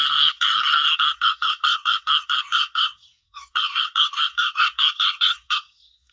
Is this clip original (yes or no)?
no